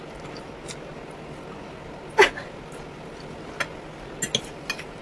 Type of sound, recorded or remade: recorded